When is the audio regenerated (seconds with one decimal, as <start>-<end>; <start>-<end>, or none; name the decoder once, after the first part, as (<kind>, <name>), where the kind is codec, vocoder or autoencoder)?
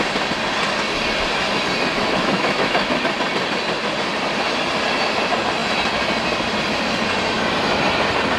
1.9-3.0 (autoencoder, DAC-VAE)